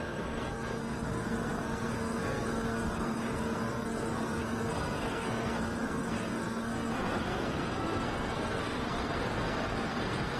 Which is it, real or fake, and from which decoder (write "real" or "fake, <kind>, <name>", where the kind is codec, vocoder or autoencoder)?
fake, codec, SNAC